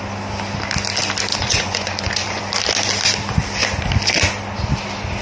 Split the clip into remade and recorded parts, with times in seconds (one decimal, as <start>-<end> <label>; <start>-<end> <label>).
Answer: 0.0-1.3 recorded; 1.3-2.4 remade; 2.4-5.2 recorded